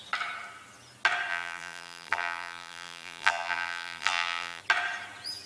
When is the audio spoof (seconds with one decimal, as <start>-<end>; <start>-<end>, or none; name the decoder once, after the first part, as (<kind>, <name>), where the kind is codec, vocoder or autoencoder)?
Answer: 1.3-4.6 (vocoder, BigVGAN v2)